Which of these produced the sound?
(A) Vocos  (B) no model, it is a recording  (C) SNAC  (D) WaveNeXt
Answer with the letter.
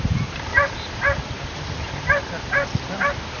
B